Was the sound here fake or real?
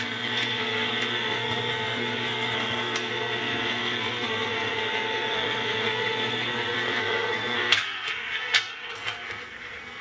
fake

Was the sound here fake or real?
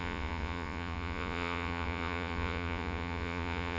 fake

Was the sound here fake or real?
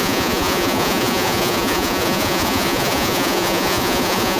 fake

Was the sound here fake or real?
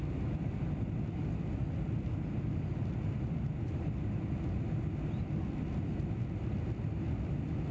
real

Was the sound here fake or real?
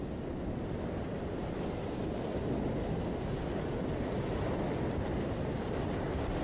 real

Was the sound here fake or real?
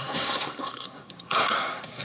fake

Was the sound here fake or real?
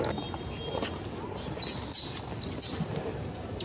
real